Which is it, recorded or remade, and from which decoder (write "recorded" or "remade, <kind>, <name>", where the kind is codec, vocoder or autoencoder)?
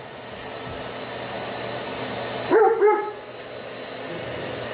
recorded